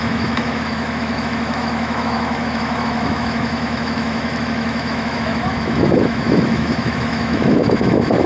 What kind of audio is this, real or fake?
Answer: fake